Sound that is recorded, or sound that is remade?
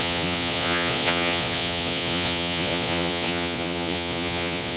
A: remade